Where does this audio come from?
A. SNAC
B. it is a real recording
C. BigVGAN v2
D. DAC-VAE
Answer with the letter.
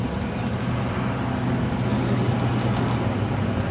B